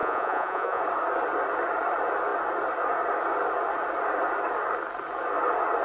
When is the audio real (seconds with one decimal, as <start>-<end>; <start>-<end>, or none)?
0.8-5.8